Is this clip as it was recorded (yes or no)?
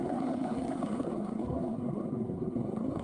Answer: no